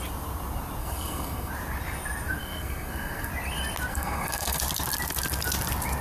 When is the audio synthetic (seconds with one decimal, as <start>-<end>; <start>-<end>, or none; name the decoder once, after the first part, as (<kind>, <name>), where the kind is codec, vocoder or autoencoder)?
0.8-1.5 (codec, SNAC); 2.4-3.3; 3.9-4.6